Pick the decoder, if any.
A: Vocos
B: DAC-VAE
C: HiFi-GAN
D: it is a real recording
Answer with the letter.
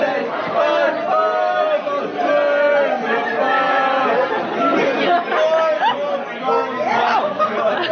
D